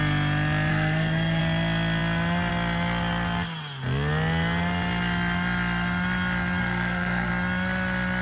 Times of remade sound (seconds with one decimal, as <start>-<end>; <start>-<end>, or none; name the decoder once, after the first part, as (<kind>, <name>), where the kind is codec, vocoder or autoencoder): 0.7-1.4 (codec, SNAC); 6.6-7.3